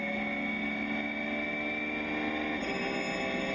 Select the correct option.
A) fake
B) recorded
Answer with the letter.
B